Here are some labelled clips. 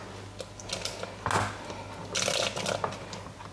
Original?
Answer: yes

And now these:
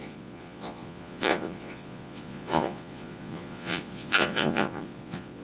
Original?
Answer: no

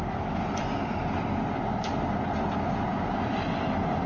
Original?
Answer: yes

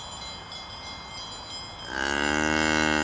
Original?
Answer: yes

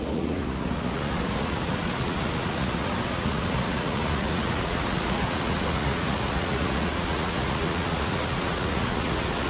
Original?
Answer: no